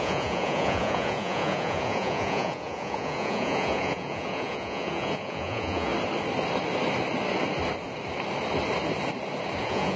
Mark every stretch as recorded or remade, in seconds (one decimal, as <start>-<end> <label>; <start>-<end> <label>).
0.0-5.9 remade; 5.9-9.6 recorded; 9.6-10.0 remade